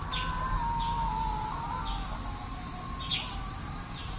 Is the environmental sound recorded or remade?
recorded